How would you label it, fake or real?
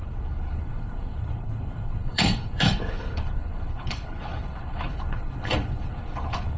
fake